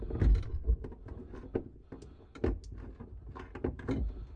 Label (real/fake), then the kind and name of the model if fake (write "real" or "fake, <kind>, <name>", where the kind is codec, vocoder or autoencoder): real